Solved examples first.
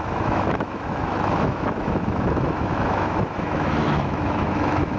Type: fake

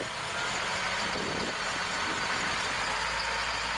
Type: real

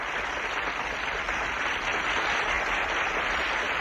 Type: real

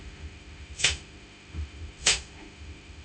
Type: fake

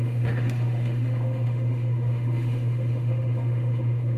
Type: fake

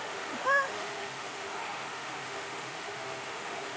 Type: fake